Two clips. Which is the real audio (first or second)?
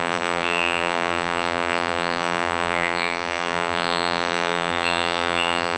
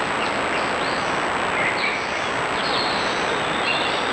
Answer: second